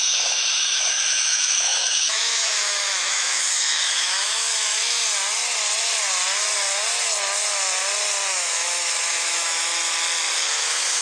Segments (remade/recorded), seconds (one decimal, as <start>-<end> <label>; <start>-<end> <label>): 0.0-5.0 remade; 5.0-8.3 recorded; 8.3-9.7 remade; 9.7-10.5 recorded; 10.5-11.0 remade